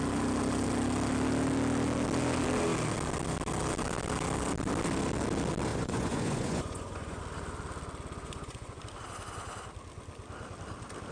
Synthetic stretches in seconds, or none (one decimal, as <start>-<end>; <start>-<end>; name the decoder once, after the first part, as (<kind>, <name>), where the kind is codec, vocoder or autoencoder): 5.7-7.2 (vocoder, Vocos); 8.2-8.8